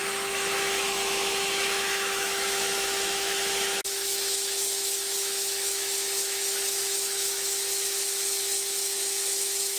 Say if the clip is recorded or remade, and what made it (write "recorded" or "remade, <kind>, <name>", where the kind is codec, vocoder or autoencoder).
remade, autoencoder, DAC-VAE